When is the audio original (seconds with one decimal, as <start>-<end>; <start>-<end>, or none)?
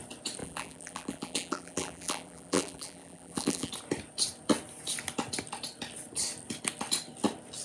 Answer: 0.0-0.4; 3.7-7.6